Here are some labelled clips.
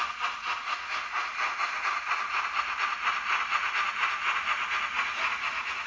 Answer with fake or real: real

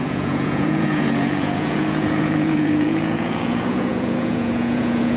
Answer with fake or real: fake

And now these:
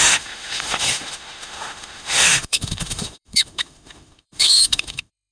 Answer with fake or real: fake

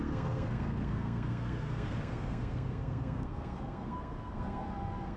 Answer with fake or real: fake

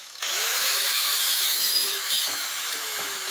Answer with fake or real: fake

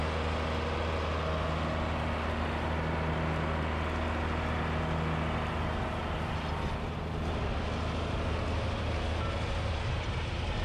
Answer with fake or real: real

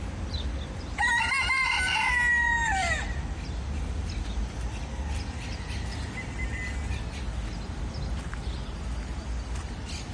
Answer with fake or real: real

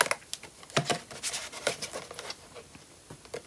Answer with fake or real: real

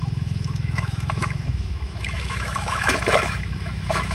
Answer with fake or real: fake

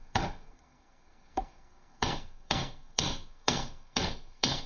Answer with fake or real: fake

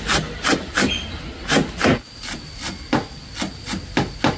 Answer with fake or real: real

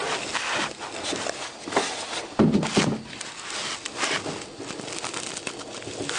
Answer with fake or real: real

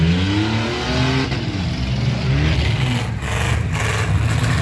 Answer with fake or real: real